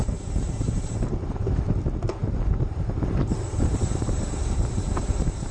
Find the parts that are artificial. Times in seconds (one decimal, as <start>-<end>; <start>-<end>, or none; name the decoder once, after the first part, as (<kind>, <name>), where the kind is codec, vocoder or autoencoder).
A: 0.0-1.8 (vocoder, BigVGAN v2); 2.2-5.5